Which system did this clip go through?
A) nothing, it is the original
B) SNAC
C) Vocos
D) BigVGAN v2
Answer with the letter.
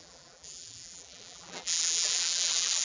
D